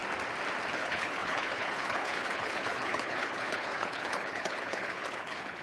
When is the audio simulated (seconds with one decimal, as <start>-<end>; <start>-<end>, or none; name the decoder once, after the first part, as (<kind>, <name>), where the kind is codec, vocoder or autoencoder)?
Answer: 0.7-5.6 (codec, HILCodec)